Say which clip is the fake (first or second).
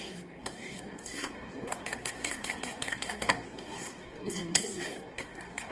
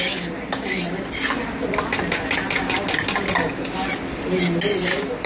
first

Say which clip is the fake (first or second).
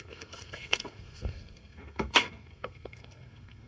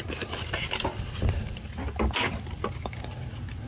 first